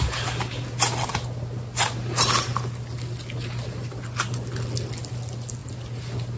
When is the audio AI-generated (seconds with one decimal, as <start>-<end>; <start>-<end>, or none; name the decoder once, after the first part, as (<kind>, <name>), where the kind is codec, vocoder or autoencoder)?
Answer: none